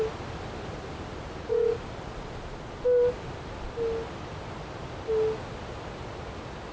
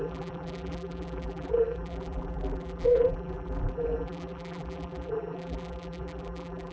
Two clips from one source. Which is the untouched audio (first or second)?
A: first